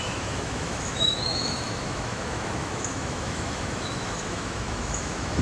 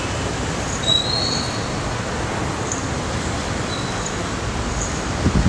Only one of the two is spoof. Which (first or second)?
first